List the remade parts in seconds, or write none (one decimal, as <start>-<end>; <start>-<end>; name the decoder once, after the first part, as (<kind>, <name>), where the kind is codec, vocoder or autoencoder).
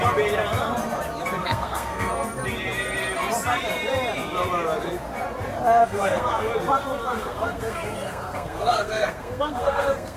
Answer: 1.4-2.1 (codec, SNAC); 5.8-6.5; 7.0-10.2